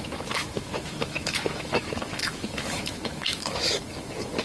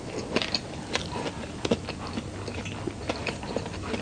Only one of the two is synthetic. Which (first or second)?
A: first